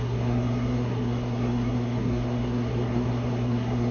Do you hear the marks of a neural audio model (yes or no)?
yes